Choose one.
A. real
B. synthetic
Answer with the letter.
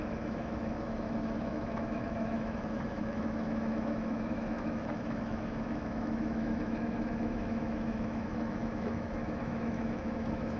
B